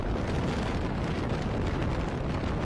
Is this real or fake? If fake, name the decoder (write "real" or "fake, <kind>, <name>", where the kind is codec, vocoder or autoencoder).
fake, vocoder, BigVGAN v2